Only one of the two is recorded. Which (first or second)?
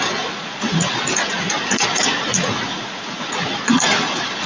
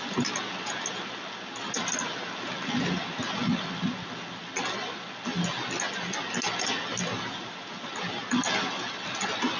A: second